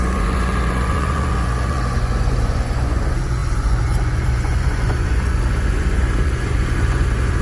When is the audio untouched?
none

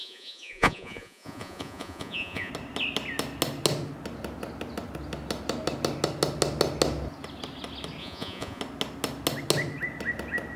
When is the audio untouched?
2.5-8.0; 8.6-10.6

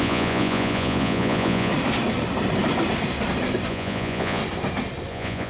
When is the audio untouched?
1.7-3.7; 4.4-5.1

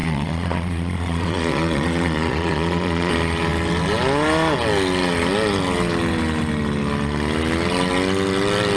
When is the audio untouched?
3.1-8.8